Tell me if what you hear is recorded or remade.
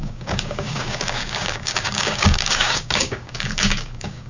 remade